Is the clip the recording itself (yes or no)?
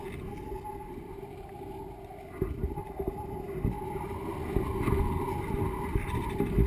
yes